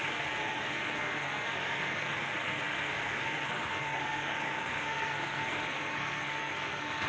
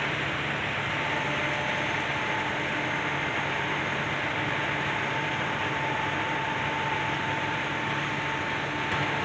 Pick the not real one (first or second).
first